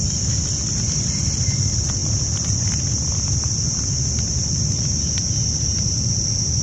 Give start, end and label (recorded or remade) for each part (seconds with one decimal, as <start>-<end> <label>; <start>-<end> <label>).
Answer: 0.0-6.6 recorded